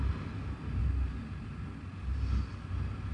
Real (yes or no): yes